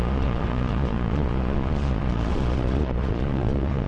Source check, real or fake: fake